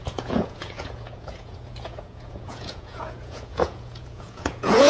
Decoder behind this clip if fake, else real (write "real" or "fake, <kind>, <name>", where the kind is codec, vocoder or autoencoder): fake, vocoder, Vocos